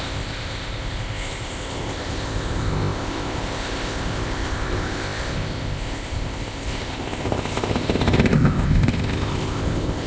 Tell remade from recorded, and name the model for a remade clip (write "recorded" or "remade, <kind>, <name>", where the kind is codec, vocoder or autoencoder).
remade, codec, ZipCodec